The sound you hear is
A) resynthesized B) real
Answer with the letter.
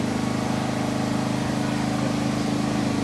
B